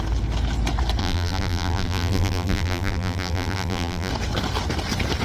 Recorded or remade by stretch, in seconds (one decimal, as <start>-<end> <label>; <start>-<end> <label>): 0.0-1.0 recorded; 1.0-4.1 remade; 4.1-5.2 recorded